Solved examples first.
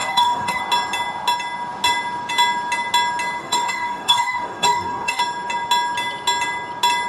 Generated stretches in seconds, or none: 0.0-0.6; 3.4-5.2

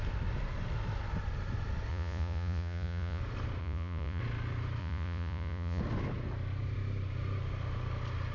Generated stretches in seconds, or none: 1.9-3.2; 3.6-4.2; 4.8-5.8

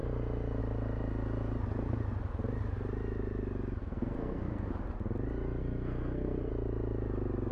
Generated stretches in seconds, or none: 3.8-4.7; 5.6-6.5

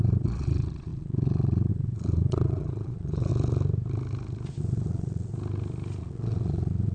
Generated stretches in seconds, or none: 0.0-3.3; 4.6-5.3; 6.0-6.9

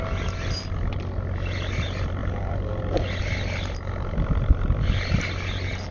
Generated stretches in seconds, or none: 2.2-2.8